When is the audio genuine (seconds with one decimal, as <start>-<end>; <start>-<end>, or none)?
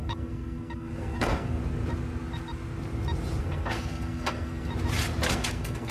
1.6-3.4; 4.7-5.3